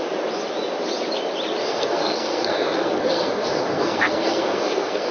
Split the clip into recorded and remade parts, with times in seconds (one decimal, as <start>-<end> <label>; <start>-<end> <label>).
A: 0.0-1.6 recorded; 1.6-5.1 remade